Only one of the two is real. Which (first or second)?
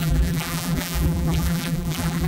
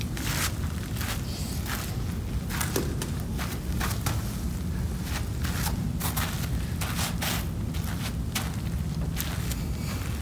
second